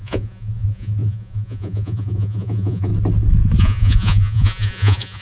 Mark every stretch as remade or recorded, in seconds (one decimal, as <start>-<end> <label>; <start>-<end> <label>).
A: 0.0-2.9 remade; 2.9-3.6 recorded; 3.6-5.2 remade